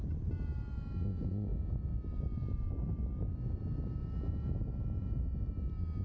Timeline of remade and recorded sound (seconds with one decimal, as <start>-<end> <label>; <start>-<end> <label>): 0.0-6.0 recorded